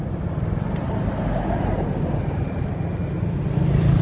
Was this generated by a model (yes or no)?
no